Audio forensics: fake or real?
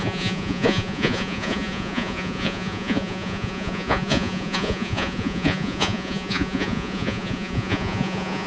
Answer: fake